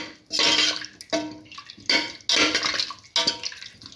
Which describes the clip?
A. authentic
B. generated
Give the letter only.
A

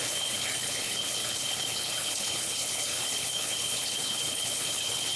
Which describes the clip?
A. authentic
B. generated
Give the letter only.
B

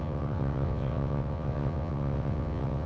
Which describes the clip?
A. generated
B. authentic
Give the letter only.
A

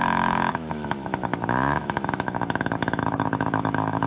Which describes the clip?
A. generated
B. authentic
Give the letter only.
A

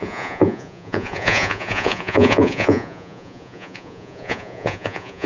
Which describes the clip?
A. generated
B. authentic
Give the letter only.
A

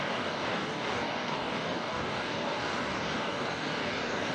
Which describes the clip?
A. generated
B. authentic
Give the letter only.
A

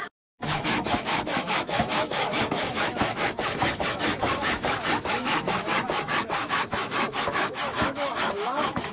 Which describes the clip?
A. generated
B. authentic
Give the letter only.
A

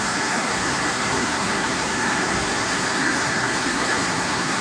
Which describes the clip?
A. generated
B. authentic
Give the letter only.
A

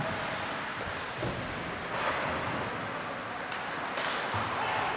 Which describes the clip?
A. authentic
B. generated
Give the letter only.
A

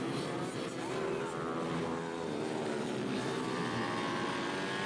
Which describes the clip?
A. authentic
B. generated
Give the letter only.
A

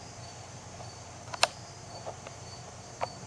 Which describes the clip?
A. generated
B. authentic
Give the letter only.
A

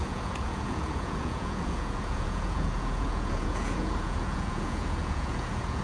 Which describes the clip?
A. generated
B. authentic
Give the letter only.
A